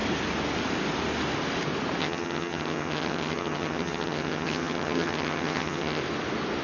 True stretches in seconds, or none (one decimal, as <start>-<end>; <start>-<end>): 0.0-2.0; 6.0-6.6